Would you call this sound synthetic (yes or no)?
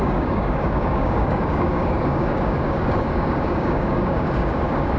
yes